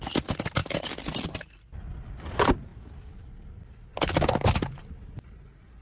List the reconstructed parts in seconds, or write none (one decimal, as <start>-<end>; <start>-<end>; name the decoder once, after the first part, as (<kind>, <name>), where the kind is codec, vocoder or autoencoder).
none